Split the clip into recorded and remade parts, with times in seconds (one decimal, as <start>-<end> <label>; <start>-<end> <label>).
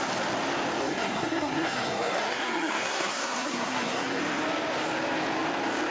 0.0-0.8 recorded; 0.8-4.2 remade; 4.2-5.9 recorded